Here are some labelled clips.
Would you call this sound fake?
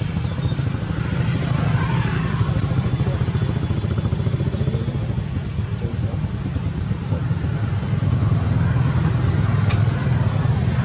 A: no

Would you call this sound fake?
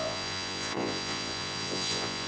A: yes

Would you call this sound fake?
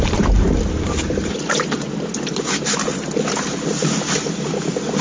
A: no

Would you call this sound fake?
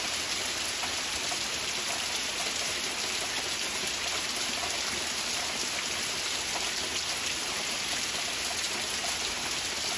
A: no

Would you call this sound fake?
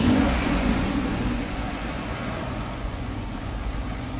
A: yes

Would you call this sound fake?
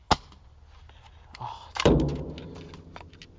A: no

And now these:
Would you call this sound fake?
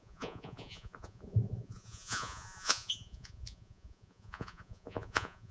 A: yes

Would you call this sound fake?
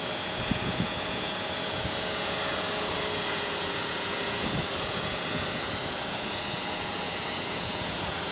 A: yes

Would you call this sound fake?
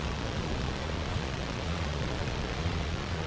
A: yes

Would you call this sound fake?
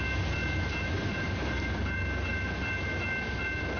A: no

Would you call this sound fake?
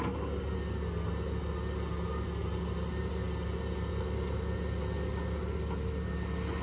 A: no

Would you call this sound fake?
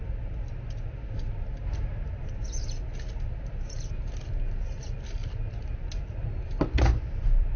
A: no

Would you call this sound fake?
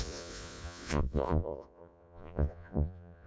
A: yes